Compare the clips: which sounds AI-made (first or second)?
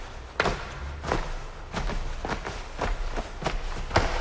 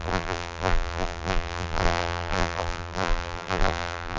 second